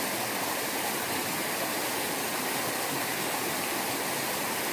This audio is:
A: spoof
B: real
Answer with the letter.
B